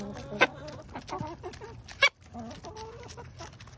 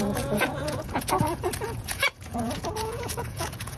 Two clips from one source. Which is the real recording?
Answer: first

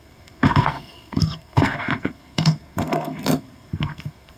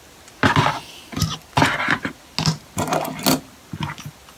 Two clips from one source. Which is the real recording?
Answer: second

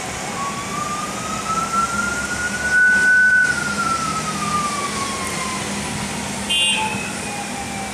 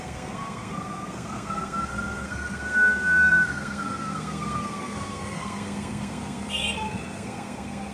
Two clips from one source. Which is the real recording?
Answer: first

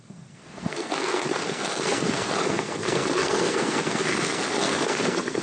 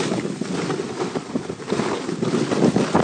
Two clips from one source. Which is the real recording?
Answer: second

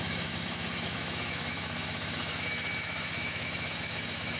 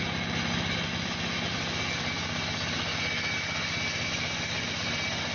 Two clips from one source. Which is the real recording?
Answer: second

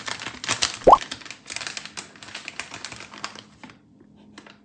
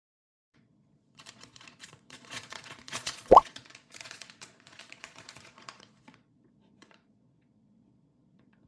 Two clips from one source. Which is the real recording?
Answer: first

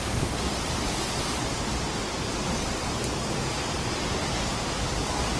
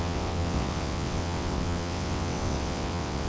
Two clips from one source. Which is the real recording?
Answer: first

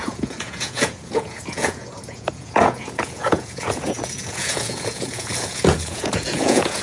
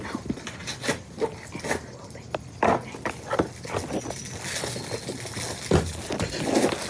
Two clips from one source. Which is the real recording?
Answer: second